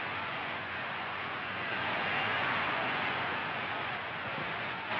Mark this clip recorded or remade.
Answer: remade